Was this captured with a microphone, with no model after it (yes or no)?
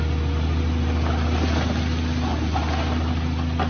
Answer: yes